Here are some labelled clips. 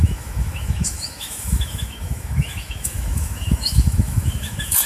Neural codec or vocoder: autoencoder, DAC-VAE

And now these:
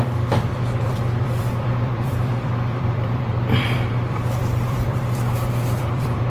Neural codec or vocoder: vocoder, BigVGAN v2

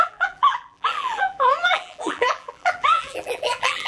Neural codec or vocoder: vocoder, BigVGAN v2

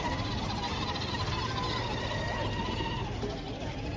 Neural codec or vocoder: none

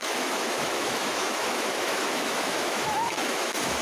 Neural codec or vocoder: autoencoder, DAC-VAE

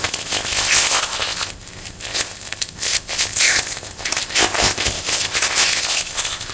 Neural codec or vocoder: codec, ZipCodec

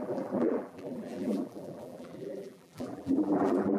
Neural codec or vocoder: vocoder, BigVGAN v2